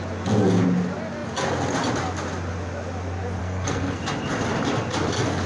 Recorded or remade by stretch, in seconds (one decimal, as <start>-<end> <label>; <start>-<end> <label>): 0.0-3.4 recorded; 3.4-4.0 remade; 4.0-5.5 recorded